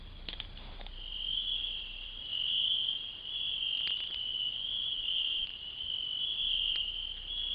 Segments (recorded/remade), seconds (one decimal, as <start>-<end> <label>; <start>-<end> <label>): 0.0-4.1 recorded; 4.1-5.9 remade; 5.9-7.5 recorded

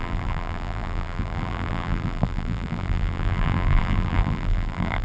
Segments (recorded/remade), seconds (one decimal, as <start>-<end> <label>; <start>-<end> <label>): 0.0-5.0 remade

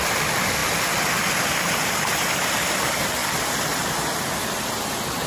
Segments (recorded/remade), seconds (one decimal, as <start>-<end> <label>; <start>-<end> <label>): 0.0-3.2 remade; 3.2-5.3 recorded

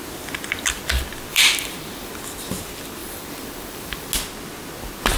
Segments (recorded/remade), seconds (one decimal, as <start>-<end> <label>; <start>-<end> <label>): 0.0-1.3 recorded; 1.3-2.1 remade; 2.1-3.0 recorded; 3.0-4.1 remade; 4.1-5.2 recorded

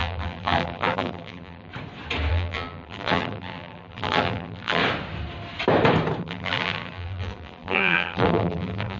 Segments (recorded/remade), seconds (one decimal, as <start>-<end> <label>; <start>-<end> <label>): 0.0-1.7 remade; 1.7-2.3 recorded; 2.3-4.8 remade; 4.8-6.2 recorded; 6.2-9.0 remade

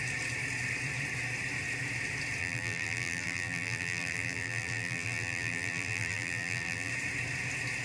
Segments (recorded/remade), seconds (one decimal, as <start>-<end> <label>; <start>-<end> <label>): 0.0-2.4 recorded; 2.4-6.9 remade; 6.9-7.8 recorded

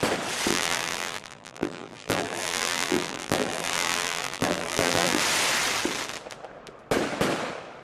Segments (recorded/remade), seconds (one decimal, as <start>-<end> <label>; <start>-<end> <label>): 0.0-0.5 recorded; 0.5-5.2 remade; 5.2-7.8 recorded